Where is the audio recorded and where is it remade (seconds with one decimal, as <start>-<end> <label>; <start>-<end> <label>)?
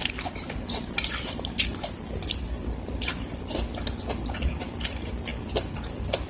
0.0-6.3 recorded